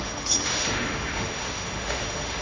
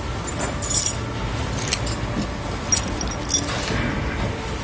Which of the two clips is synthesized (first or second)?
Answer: first